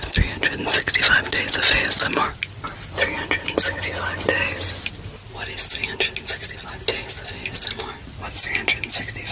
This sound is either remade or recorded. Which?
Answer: recorded